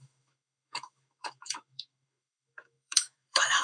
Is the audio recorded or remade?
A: remade